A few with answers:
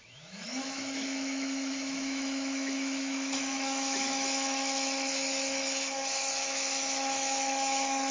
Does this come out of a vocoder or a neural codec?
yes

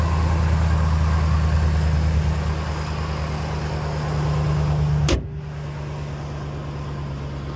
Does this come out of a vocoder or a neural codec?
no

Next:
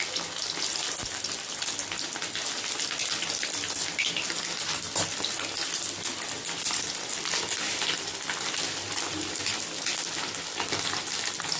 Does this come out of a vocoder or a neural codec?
no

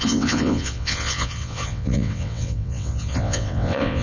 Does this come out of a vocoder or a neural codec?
yes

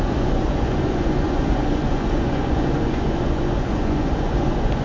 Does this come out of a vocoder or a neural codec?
yes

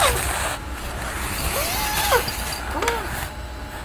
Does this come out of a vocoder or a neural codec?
no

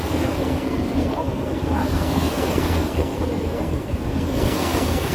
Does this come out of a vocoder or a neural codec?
yes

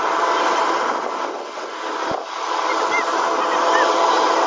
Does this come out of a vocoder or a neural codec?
no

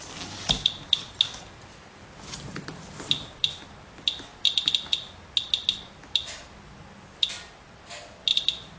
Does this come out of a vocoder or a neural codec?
no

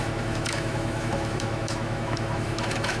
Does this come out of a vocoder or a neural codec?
yes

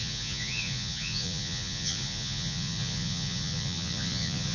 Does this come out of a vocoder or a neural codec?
yes